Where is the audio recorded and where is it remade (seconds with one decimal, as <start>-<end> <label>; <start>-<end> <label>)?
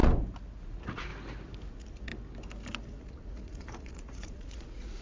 0.0-0.6 recorded; 0.6-1.1 remade; 1.1-1.7 recorded; 1.7-2.1 remade; 2.1-2.9 recorded; 2.9-5.0 remade